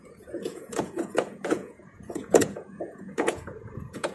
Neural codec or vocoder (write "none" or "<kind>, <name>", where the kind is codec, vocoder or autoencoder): vocoder, Vocos